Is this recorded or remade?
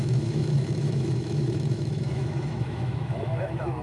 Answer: remade